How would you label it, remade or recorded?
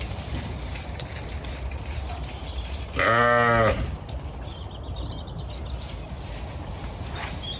recorded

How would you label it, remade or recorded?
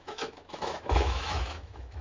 remade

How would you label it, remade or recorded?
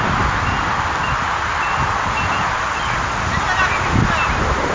recorded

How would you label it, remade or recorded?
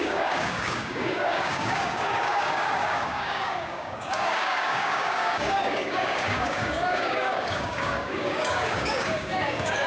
remade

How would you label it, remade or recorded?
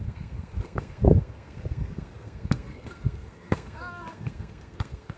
remade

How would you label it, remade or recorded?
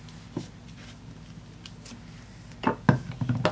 recorded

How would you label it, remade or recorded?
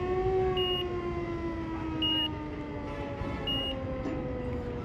recorded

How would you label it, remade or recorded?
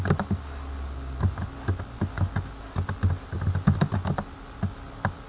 recorded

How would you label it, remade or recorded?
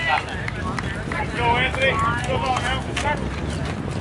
recorded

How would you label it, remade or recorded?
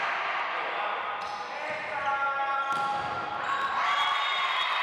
recorded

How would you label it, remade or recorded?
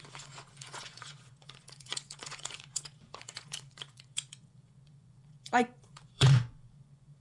remade